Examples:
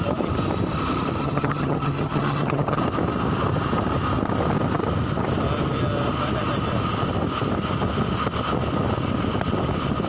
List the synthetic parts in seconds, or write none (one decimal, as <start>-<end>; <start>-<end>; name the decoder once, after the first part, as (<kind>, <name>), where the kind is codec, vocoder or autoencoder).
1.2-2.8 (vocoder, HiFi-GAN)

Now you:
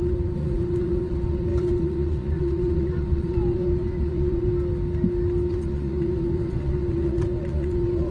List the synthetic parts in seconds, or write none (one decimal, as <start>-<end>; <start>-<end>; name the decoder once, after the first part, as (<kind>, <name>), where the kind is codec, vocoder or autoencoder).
0.0-4.5 (vocoder, Vocos); 5.5-8.1

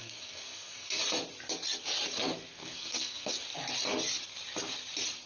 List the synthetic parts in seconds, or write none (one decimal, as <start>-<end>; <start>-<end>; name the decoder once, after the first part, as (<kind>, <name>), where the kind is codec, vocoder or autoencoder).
0.0-1.0 (codec, SNAC); 2.5-3.4